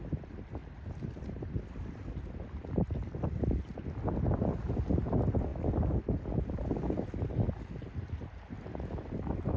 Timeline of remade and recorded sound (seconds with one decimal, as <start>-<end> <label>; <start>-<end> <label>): 0.0-9.6 recorded